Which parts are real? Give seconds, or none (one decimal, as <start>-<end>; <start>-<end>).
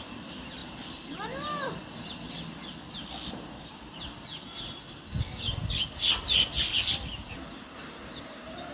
0.0-8.7